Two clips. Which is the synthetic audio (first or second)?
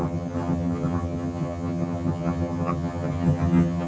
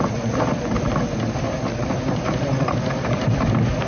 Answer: first